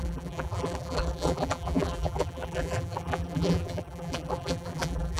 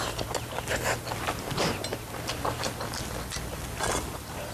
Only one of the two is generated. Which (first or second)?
first